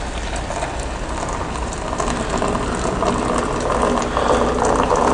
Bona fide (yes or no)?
yes